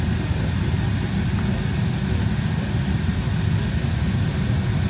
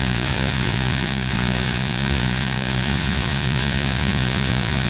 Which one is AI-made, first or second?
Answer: second